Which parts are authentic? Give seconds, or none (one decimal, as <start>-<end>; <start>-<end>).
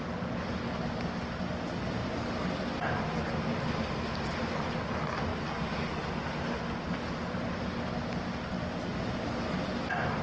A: 0.0-0.8; 1.4-5.3; 5.9-10.2